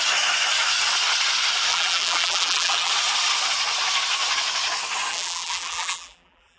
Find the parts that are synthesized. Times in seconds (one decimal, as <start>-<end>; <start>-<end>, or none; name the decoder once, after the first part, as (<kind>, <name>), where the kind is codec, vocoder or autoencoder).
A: 1.7-2.9 (vocoder, BigVGAN v2); 5.1-6.6